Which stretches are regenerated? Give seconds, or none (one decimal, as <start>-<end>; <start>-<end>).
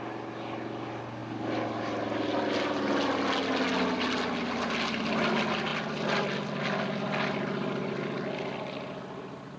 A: none